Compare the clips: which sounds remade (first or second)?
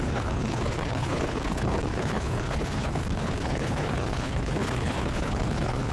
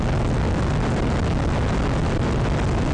first